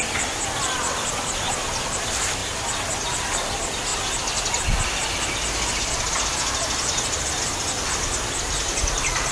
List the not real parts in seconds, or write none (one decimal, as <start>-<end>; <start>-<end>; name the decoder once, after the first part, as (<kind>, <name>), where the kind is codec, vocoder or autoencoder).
none